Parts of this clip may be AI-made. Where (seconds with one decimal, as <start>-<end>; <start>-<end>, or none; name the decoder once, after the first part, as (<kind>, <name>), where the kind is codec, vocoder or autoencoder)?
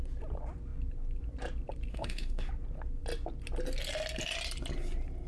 1.9-2.5 (autoencoder, DAC-VAE)